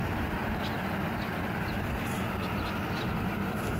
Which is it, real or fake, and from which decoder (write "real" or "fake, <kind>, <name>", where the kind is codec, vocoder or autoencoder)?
real